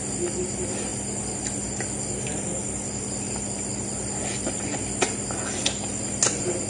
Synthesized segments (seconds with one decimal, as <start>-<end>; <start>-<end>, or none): none